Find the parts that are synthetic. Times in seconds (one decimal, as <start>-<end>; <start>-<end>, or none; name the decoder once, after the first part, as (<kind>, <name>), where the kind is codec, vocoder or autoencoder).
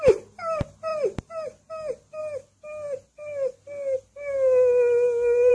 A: none